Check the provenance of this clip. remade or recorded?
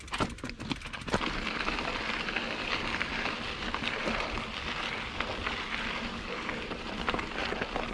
recorded